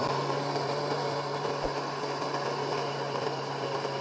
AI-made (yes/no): no